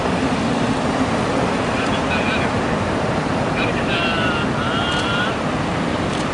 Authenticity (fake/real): fake